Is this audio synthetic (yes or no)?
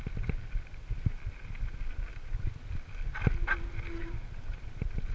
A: no